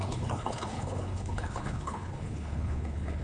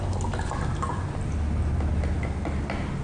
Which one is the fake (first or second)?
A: first